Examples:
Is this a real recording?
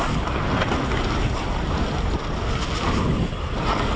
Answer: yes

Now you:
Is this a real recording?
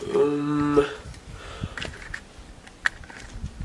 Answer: yes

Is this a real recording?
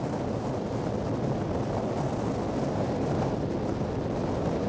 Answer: yes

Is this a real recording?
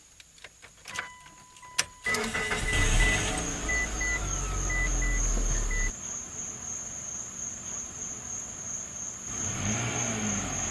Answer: yes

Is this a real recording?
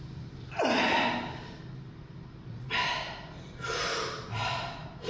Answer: yes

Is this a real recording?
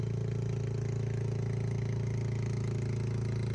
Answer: yes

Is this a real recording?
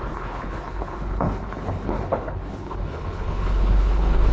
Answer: no